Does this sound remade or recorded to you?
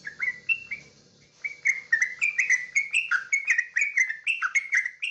recorded